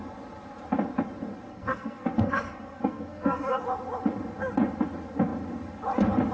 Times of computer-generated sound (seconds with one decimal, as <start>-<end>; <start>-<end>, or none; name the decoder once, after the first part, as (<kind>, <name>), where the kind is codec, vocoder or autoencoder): 1.5-3.6 (codec, SNAC)